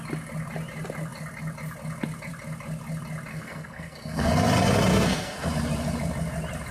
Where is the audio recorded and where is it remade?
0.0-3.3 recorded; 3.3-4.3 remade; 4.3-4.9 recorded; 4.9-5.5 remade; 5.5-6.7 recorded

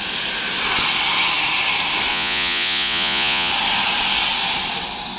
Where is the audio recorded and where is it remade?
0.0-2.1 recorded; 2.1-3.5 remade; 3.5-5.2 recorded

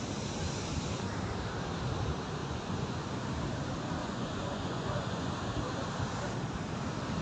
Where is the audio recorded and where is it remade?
0.0-2.4 recorded; 2.4-3.1 remade; 3.1-4.0 recorded; 4.0-5.3 remade; 5.3-7.2 recorded

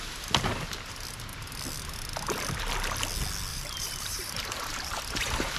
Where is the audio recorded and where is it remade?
0.0-3.5 recorded; 3.5-5.0 remade; 5.0-5.6 recorded